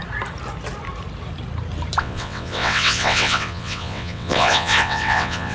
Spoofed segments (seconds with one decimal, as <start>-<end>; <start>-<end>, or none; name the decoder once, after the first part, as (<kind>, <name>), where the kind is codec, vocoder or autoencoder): 2.0-5.5 (vocoder, WaveNeXt)